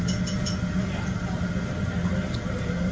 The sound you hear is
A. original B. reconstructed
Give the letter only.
A